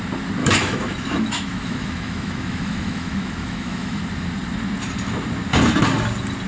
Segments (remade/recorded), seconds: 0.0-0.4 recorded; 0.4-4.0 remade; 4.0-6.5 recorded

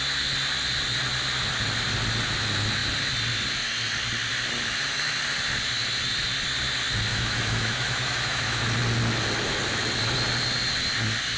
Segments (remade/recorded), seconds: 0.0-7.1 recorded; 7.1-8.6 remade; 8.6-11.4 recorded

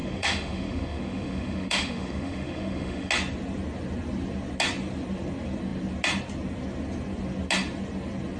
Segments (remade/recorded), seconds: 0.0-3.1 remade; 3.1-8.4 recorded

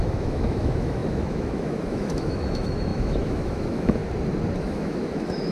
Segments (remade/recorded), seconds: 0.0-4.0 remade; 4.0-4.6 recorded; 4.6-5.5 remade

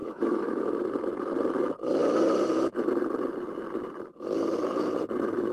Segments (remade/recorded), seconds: 0.0-0.7 remade; 0.7-5.5 recorded

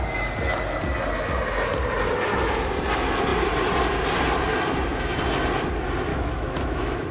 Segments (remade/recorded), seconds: 0.0-6.1 recorded; 6.1-7.1 remade

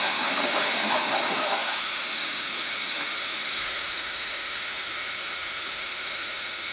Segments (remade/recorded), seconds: 0.0-6.7 remade

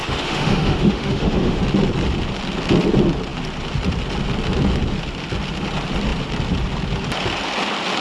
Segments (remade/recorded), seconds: 0.0-1.6 remade; 1.6-8.0 recorded